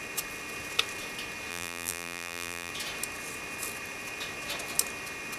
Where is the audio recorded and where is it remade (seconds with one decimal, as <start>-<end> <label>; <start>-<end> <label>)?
0.0-1.5 recorded; 1.5-2.7 remade; 2.7-5.4 recorded